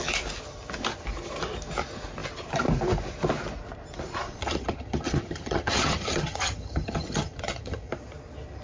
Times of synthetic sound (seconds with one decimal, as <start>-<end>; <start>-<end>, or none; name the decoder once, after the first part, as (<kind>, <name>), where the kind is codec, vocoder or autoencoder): 4.4-7.9 (vocoder, HiFi-GAN)